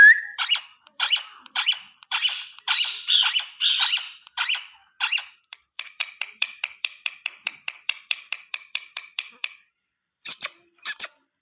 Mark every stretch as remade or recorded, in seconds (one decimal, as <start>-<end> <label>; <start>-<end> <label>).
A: 0.0-4.8 remade; 4.8-5.3 recorded; 5.3-11.4 remade